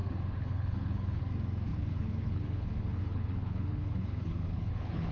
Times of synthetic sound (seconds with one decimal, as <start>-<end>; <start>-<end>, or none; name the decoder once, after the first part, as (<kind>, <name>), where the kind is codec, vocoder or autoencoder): 0.0-1.2 (codec, HILCodec); 1.7-5.1